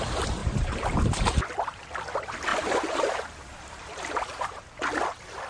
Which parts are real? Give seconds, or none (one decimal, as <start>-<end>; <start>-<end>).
0.0-0.4; 1.8-2.5; 4.6-5.5

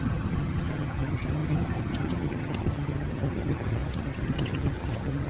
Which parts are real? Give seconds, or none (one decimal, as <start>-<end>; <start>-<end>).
none

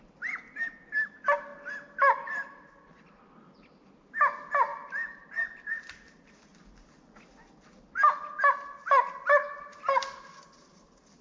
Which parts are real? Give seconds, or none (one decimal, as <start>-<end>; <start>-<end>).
0.0-11.2